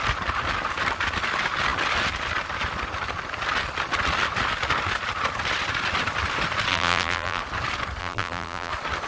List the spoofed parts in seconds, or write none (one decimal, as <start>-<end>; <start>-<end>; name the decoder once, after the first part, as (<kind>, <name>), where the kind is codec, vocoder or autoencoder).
6.7-7.4 (vocoder, BigVGAN v2); 8.0-8.7